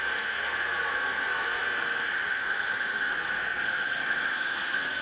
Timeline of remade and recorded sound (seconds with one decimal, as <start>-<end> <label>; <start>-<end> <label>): 0.0-5.0 remade